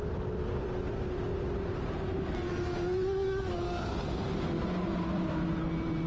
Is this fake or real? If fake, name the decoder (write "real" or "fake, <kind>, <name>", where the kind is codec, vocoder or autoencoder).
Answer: real